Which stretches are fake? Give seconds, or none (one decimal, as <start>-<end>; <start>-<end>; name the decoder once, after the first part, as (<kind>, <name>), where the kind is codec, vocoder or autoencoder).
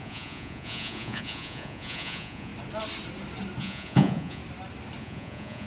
0.0-2.5 (vocoder, Vocos); 3.6-4.4; 5.0-5.7